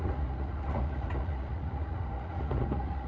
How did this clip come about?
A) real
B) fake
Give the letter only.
B